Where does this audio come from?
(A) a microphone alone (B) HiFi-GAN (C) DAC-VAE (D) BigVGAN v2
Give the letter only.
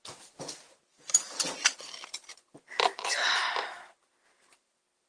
A